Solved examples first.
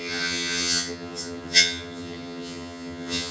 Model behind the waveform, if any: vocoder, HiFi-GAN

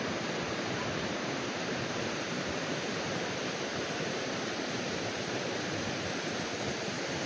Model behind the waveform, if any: vocoder, BigVGAN v2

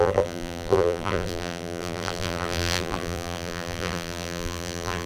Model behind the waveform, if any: vocoder, BigVGAN v2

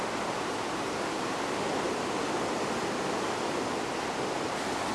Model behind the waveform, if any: none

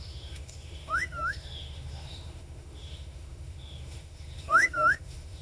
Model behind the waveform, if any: autoencoder, DAC-VAE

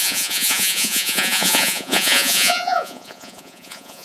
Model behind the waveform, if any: vocoder, Vocos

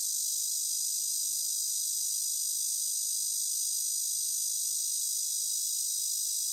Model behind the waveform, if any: none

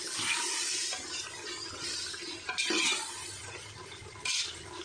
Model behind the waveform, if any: none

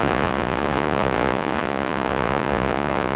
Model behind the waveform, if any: vocoder, Vocos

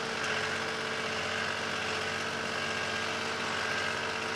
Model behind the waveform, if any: none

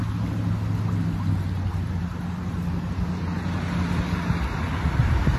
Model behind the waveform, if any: none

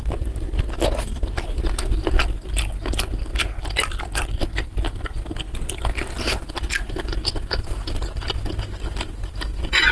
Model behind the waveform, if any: none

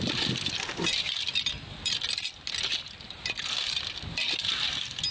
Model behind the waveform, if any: none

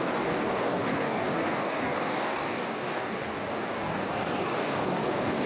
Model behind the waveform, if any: codec, DAC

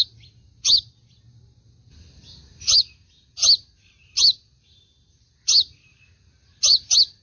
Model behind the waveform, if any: none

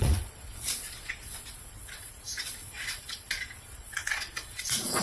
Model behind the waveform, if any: vocoder, Vocos